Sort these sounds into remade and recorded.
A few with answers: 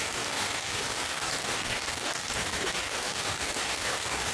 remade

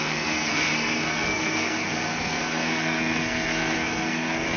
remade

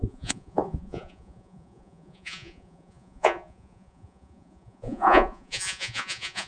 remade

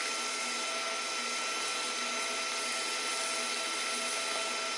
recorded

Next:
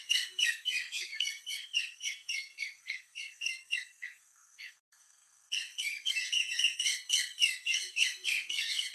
remade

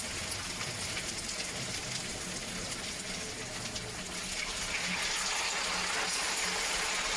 recorded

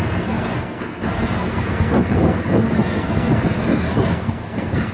remade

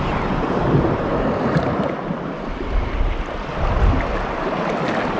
recorded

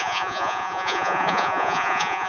remade